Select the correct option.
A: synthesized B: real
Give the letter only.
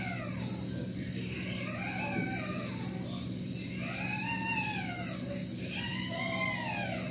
B